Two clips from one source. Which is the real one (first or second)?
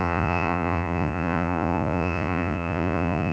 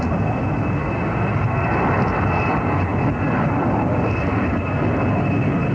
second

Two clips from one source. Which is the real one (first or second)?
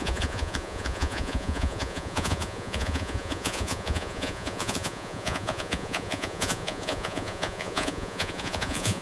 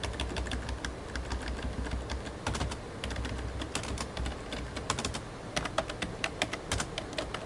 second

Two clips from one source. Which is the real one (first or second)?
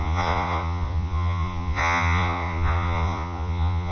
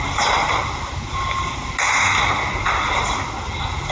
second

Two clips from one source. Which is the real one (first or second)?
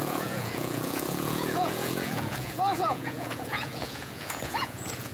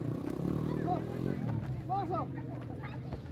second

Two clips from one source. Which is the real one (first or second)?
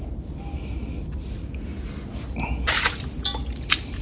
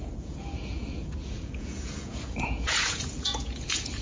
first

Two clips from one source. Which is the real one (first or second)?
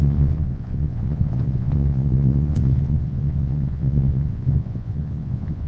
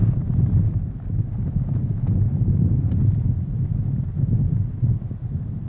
second